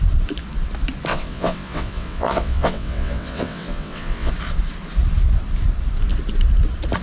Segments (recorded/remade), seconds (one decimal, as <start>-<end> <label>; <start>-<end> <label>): 0.0-1.1 recorded; 1.1-4.3 remade; 4.3-7.0 recorded